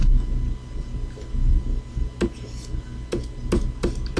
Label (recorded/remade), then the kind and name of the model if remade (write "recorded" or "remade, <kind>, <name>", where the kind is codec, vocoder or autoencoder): recorded